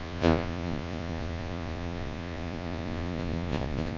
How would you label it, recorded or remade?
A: remade